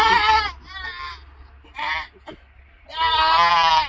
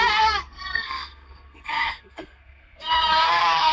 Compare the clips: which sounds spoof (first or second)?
second